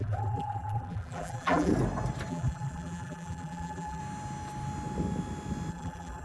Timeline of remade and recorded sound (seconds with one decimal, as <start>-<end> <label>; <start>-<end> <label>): 0.0-1.7 remade; 1.7-2.3 recorded; 2.3-4.0 remade; 4.0-5.7 recorded; 5.7-6.2 remade